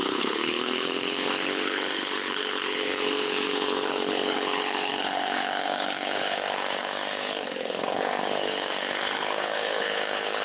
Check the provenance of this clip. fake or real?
fake